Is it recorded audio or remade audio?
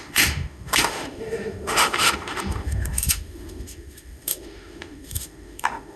remade